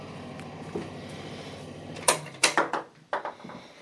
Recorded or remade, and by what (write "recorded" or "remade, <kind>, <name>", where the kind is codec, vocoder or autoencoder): remade, vocoder, BigVGAN v2